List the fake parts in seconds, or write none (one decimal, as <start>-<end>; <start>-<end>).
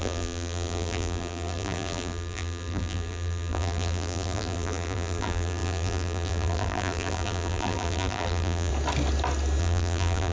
0.0-8.7; 9.6-10.3